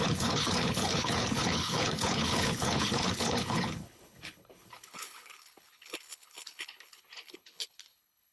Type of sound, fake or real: fake